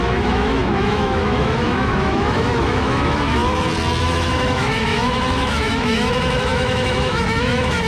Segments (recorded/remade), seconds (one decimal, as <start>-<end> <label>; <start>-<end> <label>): 0.0-3.4 remade; 3.4-4.0 recorded; 4.0-7.9 remade